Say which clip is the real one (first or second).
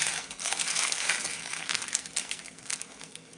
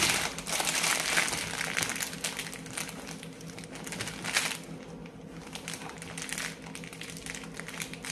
second